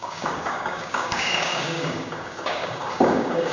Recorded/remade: remade